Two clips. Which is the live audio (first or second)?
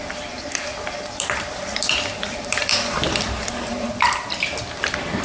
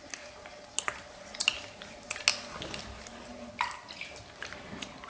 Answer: second